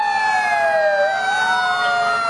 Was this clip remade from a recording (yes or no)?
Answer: no